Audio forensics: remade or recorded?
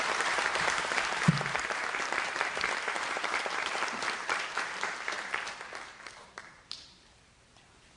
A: remade